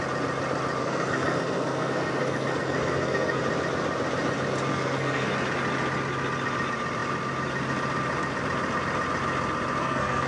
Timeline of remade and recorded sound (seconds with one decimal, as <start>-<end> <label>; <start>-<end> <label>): 0.0-0.8 recorded; 0.8-3.4 remade; 3.4-4.7 recorded; 4.7-5.3 remade; 5.3-9.8 recorded; 9.8-10.3 remade